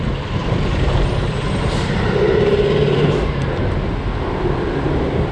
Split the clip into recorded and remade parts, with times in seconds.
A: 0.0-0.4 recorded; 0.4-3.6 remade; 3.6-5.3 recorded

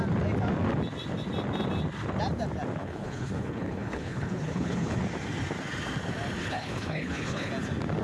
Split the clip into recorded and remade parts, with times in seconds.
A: 0.0-2.8 recorded; 2.8-5.0 remade; 5.0-6.4 recorded; 6.4-7.5 remade; 7.5-8.0 recorded

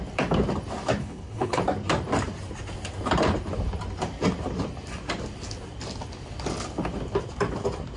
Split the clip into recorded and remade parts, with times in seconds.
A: 0.0-1.0 recorded; 1.0-1.6 remade; 1.6-8.0 recorded